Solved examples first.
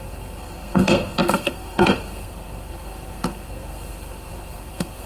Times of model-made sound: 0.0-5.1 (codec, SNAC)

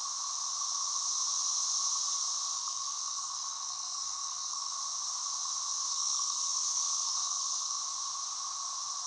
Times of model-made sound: 2.6-4.7 (codec, SNAC); 5.9-7.8

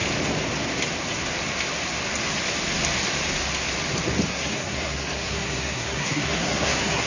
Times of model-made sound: 4.3-7.1 (codec, SNAC)

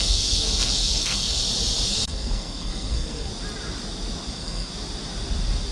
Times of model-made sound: 0.0-1.4 (codec, SNAC); 1.9-3.3; 4.3-4.7

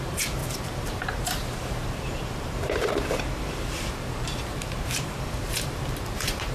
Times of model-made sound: 0.0-6.5 (vocoder, BigVGAN v2)

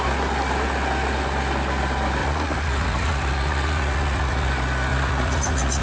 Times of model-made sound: 2.2-4.5 (vocoder, Vocos); 4.9-5.8

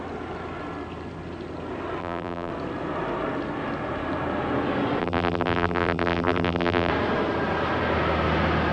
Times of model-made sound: 2.0-2.5 (vocoder, BigVGAN v2); 5.0-6.9